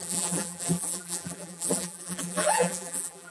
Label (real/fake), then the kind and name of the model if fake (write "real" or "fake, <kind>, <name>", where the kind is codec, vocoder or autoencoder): fake, vocoder, BigVGAN v2